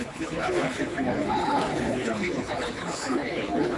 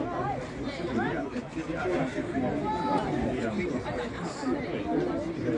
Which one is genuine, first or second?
second